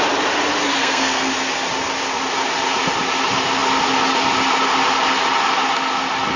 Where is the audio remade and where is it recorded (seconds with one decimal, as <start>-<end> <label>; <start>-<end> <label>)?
0.0-0.8 recorded; 0.8-1.3 remade; 1.3-6.4 recorded